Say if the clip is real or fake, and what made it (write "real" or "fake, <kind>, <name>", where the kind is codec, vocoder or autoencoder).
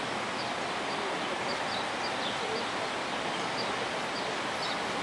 real